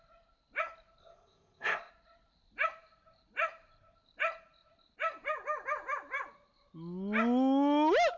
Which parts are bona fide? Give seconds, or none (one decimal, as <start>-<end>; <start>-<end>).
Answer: 0.0-1.0; 1.9-8.2